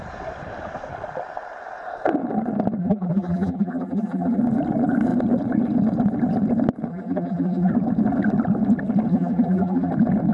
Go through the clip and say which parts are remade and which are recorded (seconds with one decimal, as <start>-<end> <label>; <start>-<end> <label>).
0.0-2.8 recorded; 2.8-4.4 remade; 4.4-6.9 recorded; 6.9-7.7 remade; 7.7-9.1 recorded; 9.1-9.9 remade; 9.9-10.3 recorded